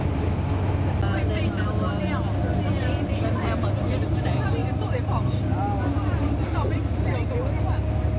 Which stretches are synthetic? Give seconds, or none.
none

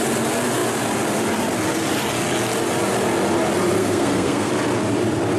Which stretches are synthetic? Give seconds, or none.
3.8-4.5 (codec, SNAC)

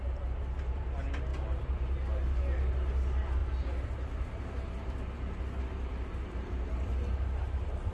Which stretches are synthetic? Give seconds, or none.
none

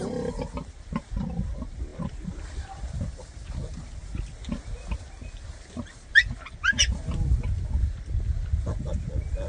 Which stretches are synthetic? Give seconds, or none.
none

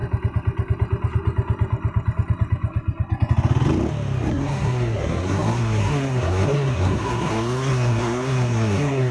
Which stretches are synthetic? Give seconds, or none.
4.3-9.1 (codec, SNAC)

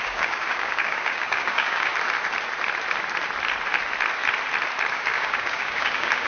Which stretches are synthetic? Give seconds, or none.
0.0-1.9 (codec, DAC); 4.9-6.3

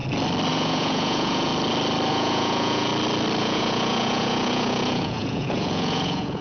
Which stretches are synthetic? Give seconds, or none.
0.5-1.5 (vocoder, Vocos); 2.1-2.9; 3.4-6.4

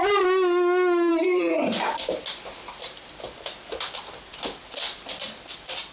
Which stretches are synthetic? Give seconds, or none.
1.1-4.3 (vocoder, BigVGAN v2)